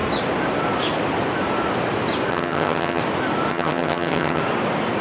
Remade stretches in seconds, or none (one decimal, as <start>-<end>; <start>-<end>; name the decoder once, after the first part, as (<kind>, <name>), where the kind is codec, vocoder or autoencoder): 2.3-3.0 (vocoder, HiFi-GAN); 3.5-4.4